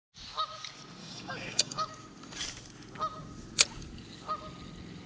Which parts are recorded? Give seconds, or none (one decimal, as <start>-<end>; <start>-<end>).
0.0-1.0; 1.9-5.1